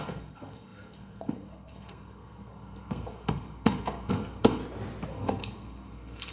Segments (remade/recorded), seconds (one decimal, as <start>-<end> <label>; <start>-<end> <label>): 0.0-4.6 remade; 4.6-5.1 recorded; 5.1-6.3 remade